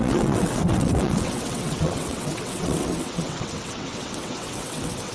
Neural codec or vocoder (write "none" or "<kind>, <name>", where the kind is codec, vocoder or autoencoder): vocoder, WaveNeXt